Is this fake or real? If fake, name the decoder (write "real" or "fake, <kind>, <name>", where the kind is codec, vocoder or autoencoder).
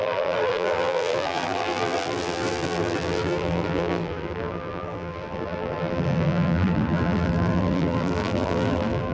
fake, vocoder, BigVGAN v2